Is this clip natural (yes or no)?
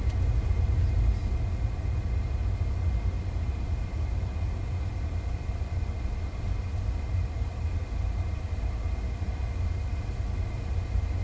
yes